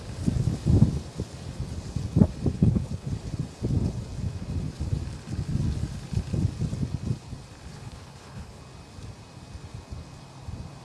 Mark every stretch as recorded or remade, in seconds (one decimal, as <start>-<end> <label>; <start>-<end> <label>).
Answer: 0.0-2.5 recorded; 2.5-3.1 remade; 3.1-7.7 recorded; 7.7-8.6 remade; 8.6-10.8 recorded